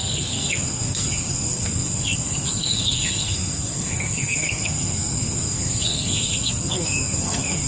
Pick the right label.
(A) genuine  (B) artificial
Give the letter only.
B